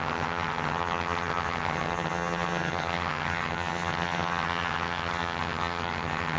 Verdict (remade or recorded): remade